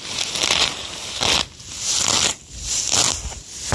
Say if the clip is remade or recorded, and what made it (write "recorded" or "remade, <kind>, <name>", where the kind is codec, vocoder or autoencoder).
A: recorded